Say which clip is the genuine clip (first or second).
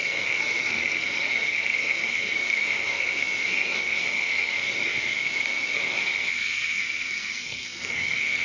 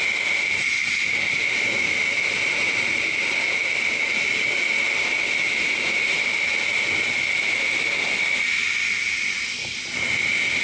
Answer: second